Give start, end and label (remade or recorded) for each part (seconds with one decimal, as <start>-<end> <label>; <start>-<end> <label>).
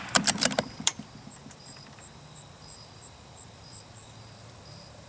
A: 0.0-5.1 remade